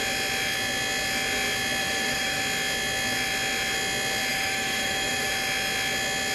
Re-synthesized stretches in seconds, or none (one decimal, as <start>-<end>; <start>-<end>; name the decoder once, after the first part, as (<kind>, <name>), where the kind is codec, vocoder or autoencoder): 1.8-2.4 (autoencoder, DAC-VAE); 4.3-5.3